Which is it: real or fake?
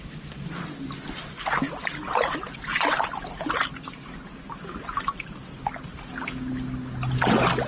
real